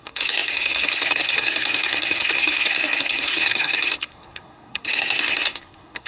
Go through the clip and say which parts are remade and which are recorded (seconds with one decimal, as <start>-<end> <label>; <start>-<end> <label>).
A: 0.0-6.1 remade